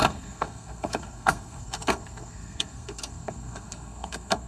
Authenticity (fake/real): fake